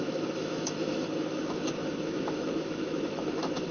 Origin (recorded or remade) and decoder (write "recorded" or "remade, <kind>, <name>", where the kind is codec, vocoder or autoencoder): remade, autoencoder, DAC-VAE